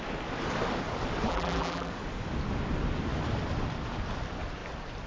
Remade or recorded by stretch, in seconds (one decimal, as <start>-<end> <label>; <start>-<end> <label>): 0.0-1.3 recorded; 1.3-1.9 remade; 1.9-5.1 recorded